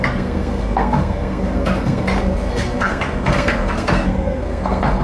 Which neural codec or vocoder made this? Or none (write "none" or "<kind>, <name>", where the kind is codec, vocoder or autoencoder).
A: codec, SNAC